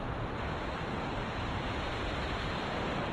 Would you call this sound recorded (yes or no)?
yes